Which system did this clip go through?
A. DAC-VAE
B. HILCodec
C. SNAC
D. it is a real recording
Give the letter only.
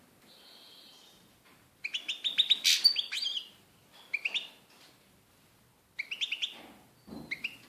D